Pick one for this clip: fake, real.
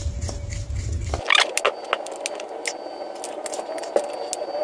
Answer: real